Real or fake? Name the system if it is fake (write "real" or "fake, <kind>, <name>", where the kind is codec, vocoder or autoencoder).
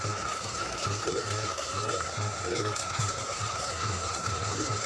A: fake, codec, SNAC